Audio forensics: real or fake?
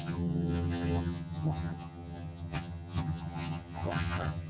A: fake